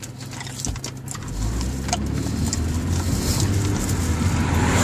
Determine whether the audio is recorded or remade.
recorded